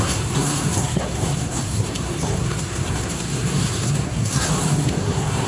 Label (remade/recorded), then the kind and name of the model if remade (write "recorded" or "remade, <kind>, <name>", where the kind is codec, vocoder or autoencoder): remade, codec, SNAC